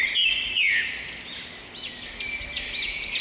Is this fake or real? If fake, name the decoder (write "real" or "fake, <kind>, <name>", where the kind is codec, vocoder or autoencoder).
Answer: real